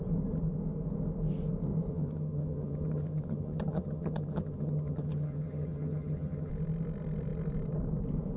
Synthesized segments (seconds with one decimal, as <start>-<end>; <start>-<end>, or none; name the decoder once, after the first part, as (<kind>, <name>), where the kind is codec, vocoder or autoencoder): 1.9-6.5 (vocoder, HiFi-GAN)